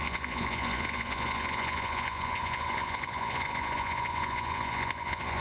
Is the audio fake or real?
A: fake